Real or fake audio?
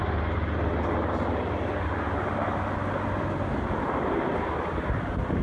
real